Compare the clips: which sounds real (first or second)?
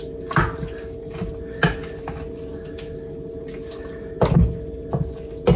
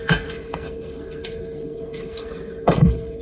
first